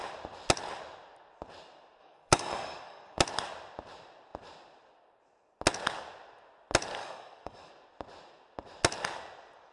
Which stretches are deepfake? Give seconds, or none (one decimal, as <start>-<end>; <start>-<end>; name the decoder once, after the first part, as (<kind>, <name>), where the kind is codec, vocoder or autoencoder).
2.0-3.2 (codec, DAC); 7.0-7.7